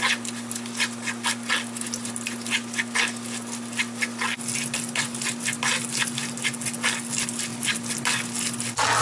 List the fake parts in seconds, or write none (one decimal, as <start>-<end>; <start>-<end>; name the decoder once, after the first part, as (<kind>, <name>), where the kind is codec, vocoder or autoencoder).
7.5-8.1 (vocoder, BigVGAN v2)